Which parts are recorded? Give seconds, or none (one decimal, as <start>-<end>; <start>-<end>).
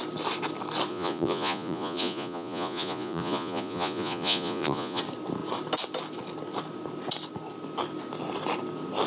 0.0-0.9; 5.0-9.1